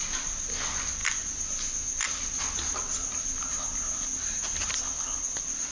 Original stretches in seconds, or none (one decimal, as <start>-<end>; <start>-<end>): 0.0-5.7